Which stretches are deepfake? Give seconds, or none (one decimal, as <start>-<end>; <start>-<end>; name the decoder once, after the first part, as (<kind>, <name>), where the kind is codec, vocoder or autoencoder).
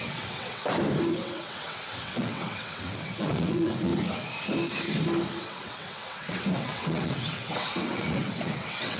0.0-0.6 (vocoder, WaveNeXt); 1.1-3.9; 5.4-9.0